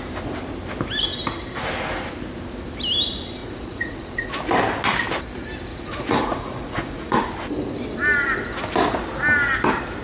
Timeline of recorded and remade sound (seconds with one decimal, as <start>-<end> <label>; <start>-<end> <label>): 0.0-3.4 recorded; 3.4-4.3 remade; 4.3-5.7 recorded; 5.7-7.3 remade; 7.3-10.0 recorded